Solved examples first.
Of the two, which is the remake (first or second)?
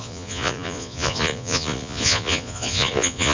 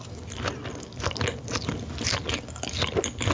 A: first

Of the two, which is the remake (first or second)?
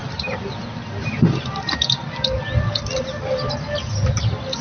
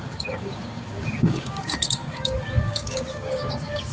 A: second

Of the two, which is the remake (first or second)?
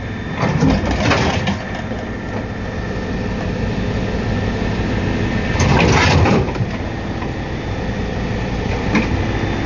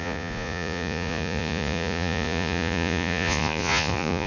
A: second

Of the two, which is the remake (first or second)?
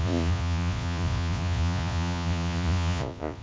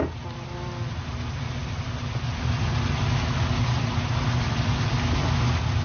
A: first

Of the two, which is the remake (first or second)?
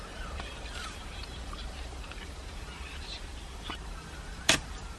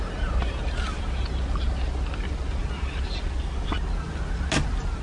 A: first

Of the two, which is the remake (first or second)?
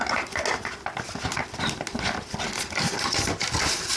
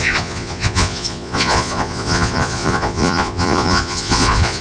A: second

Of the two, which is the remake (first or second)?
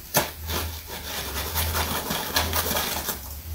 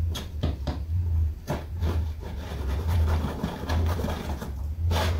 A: second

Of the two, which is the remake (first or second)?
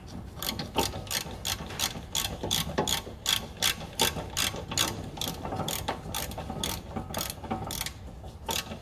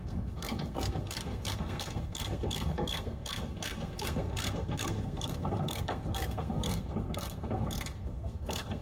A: second